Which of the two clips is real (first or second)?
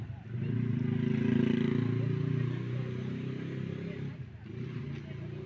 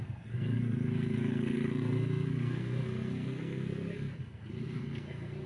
first